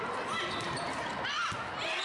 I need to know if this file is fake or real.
real